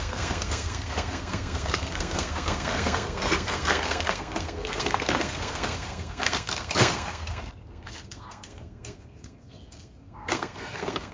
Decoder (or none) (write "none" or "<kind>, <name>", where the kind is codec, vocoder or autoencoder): codec, SNAC